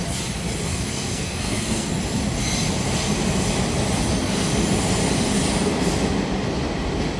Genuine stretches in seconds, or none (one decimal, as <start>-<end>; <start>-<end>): 0.0-0.7; 1.9-7.2